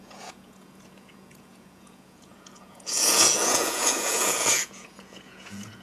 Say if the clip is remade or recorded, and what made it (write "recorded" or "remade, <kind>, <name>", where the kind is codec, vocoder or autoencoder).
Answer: remade, vocoder, Vocos